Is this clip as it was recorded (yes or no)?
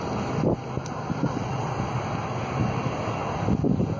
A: yes